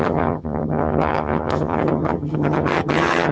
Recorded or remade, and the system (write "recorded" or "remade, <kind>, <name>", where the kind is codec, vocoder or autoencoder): remade, vocoder, HiFi-GAN